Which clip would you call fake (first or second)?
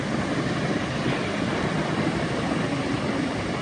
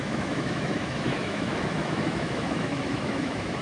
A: second